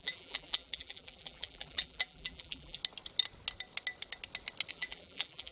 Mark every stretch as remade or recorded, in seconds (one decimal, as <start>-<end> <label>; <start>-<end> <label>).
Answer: 0.0-2.8 remade; 2.8-4.7 recorded; 4.7-5.5 remade